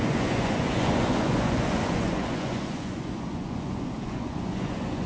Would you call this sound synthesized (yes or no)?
yes